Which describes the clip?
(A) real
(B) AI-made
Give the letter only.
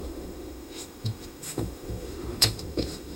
B